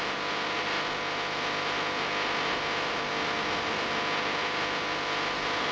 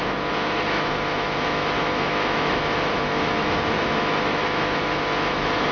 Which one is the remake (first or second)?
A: second